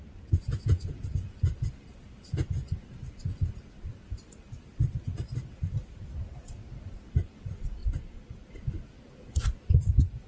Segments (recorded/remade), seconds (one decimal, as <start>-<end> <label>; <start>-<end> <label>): 0.0-3.9 recorded; 3.9-6.8 remade; 6.8-7.8 recorded; 7.8-8.5 remade; 8.5-10.3 recorded